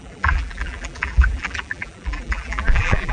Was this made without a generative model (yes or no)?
no